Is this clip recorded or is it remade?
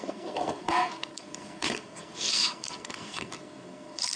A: remade